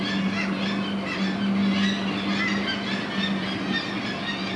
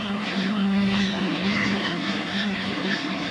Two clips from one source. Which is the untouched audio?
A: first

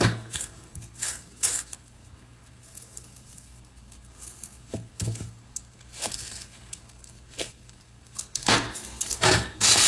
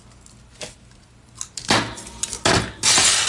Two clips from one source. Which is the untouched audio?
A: second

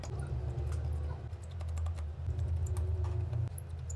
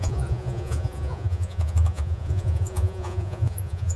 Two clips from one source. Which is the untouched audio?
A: first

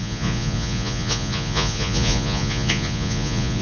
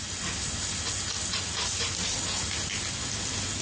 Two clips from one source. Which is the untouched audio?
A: second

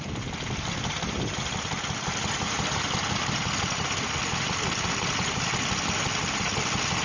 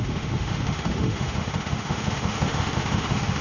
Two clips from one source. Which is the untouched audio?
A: first